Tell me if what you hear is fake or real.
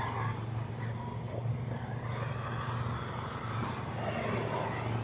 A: real